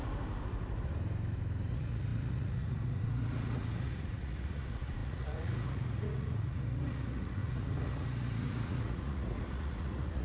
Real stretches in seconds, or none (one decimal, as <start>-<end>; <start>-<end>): 0.0-1.7